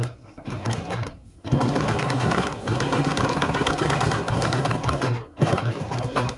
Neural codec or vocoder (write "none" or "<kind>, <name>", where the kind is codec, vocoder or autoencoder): codec, SNAC